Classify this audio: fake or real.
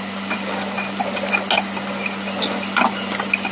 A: real